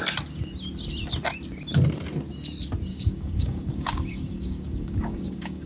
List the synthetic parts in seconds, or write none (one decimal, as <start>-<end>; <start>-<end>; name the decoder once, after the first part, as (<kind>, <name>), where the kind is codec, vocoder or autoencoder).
2.9-5.7 (codec, DAC)